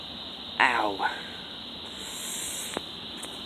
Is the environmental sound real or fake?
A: real